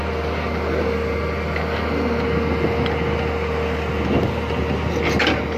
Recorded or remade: recorded